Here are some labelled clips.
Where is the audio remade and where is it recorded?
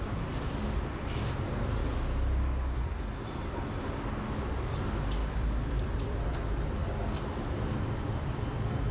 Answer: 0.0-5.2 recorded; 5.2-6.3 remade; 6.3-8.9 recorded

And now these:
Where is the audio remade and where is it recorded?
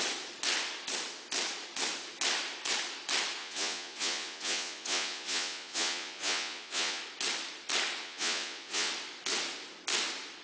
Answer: 0.0-3.4 recorded; 3.4-7.0 remade; 7.0-8.0 recorded; 8.0-8.9 remade; 8.9-10.4 recorded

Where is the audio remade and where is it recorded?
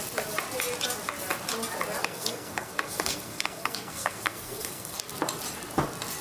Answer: 0.0-2.0 recorded; 2.0-5.0 remade; 5.0-6.2 recorded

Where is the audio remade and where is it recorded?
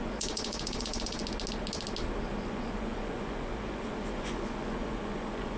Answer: 0.0-1.2 remade; 1.2-2.4 recorded; 2.4-5.6 remade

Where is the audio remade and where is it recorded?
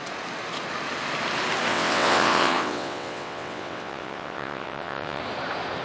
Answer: 0.0-1.7 recorded; 1.7-5.2 remade; 5.2-5.8 recorded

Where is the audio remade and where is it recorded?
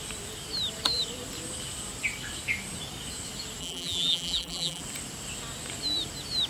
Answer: 0.0-3.6 recorded; 3.6-4.8 remade; 4.8-6.5 recorded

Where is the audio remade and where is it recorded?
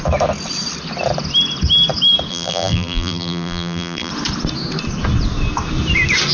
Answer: 0.0-2.3 recorded; 2.3-4.1 remade; 4.1-6.3 recorded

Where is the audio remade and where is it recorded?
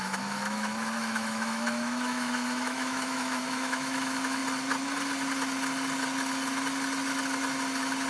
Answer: 0.0-4.4 remade; 4.4-8.1 recorded